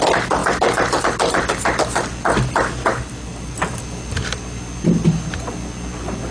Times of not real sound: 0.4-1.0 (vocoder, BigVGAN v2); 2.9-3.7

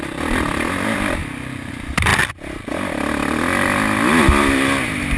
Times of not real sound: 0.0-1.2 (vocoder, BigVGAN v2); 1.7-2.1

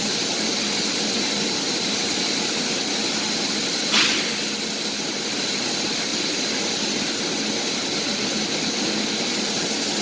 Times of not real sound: none